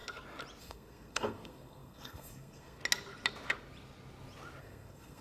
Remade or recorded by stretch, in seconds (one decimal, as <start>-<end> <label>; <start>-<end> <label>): 0.0-0.6 recorded; 0.6-2.8 remade; 2.8-4.6 recorded; 4.6-5.2 remade